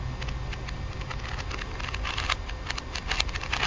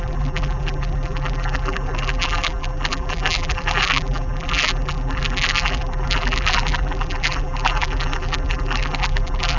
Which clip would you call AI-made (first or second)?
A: second